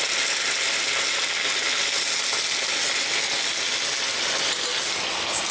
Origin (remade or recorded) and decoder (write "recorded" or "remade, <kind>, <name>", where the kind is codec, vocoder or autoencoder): recorded